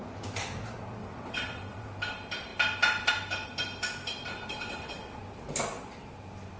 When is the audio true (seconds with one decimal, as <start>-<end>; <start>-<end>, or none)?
0.0-1.0; 1.9-4.5; 5.2-6.6